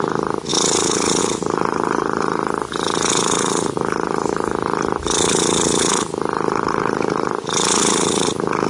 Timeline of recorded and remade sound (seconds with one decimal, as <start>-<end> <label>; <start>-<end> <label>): 0.0-8.7 recorded